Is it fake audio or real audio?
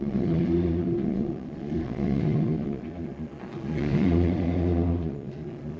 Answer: fake